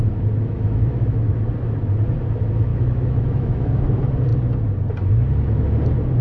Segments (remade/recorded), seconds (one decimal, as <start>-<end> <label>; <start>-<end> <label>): 0.0-0.4 recorded; 0.4-1.3 remade; 1.3-2.7 recorded; 2.7-3.8 remade; 3.8-6.2 recorded